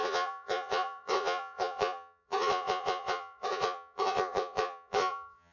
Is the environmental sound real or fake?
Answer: fake